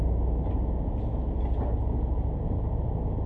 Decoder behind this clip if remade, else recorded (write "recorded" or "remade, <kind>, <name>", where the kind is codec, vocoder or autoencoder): recorded